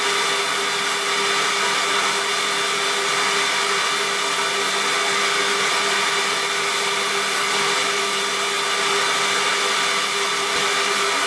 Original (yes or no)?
yes